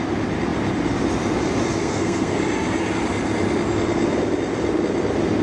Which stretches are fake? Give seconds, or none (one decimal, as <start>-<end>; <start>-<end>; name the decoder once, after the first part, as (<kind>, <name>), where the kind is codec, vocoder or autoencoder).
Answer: 1.8-2.4 (codec, SNAC)